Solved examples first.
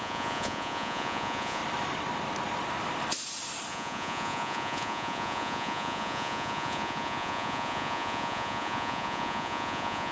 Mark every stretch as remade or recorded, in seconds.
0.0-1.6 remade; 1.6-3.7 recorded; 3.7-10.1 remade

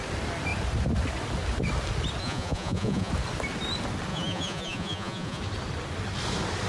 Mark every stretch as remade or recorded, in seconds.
0.0-2.2 recorded; 2.2-3.1 remade; 3.1-4.1 recorded; 4.1-5.4 remade; 5.4-6.7 recorded